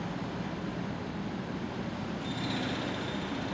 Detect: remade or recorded recorded